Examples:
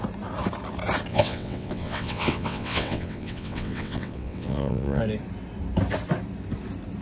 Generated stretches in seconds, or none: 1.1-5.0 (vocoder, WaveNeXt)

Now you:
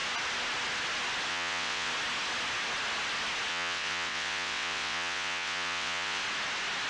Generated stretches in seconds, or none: 1.3-1.9 (vocoder, WaveNeXt); 3.5-6.2

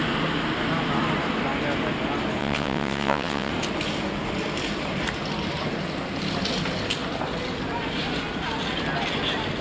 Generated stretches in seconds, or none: 2.4-3.5 (vocoder, WaveNeXt)

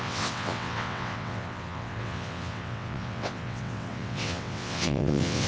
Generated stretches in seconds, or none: 0.0-5.5 (vocoder, WaveNeXt)

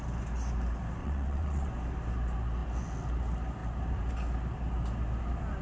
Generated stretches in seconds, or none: 1.0-1.7 (vocoder, WaveNeXt)

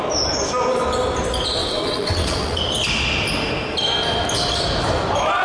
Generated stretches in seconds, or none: 1.6-2.6 (vocoder, WaveNeXt)

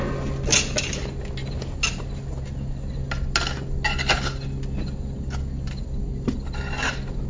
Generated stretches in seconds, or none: none

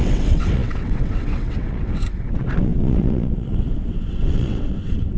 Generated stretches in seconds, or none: 0.0-5.2 (vocoder, WaveNeXt)